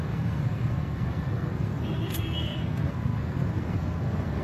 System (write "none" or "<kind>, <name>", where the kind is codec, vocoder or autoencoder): codec, SNAC